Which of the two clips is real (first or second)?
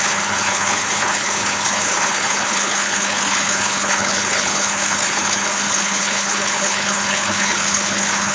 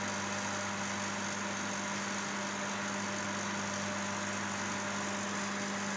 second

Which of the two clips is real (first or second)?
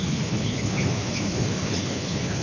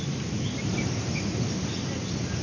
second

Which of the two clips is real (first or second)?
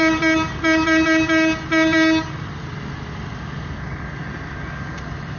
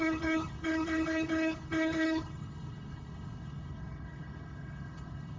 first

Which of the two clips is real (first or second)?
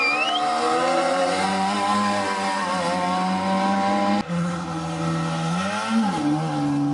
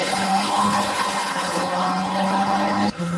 first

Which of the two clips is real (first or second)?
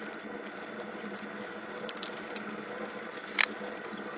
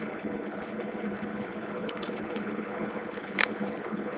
first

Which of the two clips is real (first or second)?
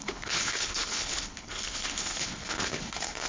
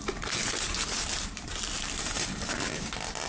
second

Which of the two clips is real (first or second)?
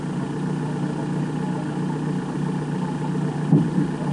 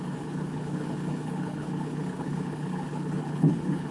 first